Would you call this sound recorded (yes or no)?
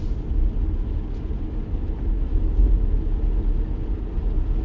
yes